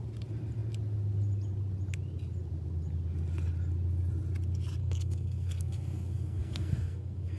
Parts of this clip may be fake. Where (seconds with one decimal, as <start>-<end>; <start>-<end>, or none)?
4.8-7.4